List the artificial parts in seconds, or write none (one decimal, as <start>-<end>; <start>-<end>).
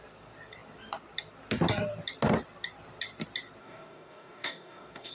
3.6-5.1